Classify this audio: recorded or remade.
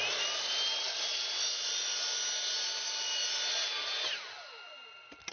recorded